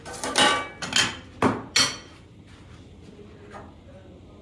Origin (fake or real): real